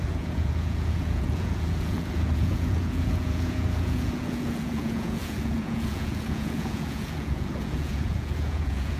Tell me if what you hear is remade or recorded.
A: remade